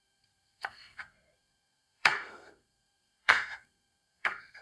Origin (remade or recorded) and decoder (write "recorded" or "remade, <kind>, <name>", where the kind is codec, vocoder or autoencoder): remade, codec, SNAC